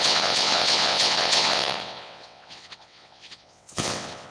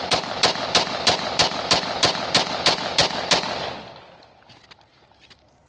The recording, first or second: second